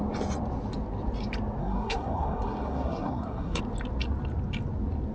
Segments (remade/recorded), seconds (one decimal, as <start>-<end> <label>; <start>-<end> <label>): 0.0-1.6 recorded; 1.6-3.6 remade; 3.6-5.1 recorded